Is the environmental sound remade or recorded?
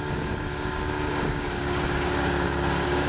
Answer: remade